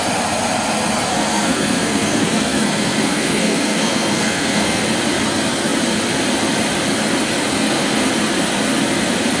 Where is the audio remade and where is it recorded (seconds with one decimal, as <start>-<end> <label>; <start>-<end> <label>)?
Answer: 0.0-1.1 recorded; 1.1-4.8 remade; 4.8-7.5 recorded; 7.5-8.1 remade; 8.1-9.4 recorded